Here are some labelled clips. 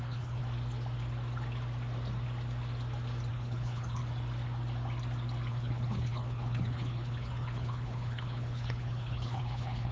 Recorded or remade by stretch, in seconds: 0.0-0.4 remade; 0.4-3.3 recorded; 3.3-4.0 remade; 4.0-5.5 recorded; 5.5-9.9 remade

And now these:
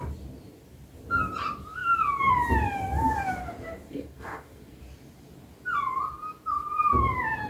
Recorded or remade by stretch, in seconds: 0.0-3.9 recorded; 3.9-4.8 remade; 4.8-7.5 recorded

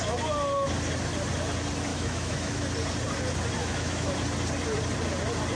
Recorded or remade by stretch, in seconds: 0.0-1.9 recorded; 1.9-2.6 remade; 2.6-3.6 recorded; 3.6-4.1 remade; 4.1-5.5 recorded

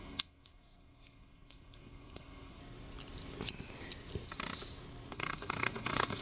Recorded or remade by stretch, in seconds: 0.0-2.6 remade; 2.6-5.1 recorded; 5.1-6.2 remade

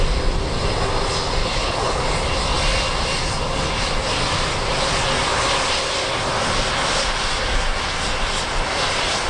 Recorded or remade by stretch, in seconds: 0.0-1.4 recorded; 1.4-2.0 remade; 2.0-9.3 recorded

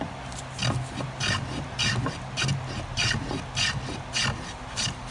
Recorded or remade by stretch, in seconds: 0.0-5.1 recorded

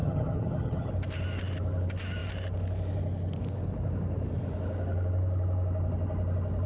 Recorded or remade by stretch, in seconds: 0.0-0.9 remade; 0.9-6.7 recorded